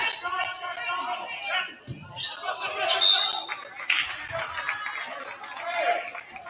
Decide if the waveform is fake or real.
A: real